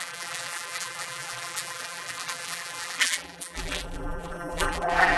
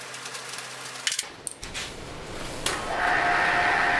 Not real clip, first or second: first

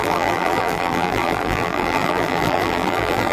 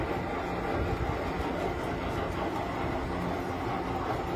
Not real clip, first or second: first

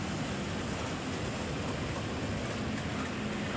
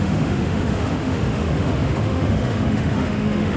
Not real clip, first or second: second